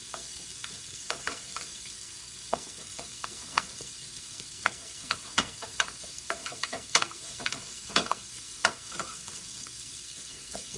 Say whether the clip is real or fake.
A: fake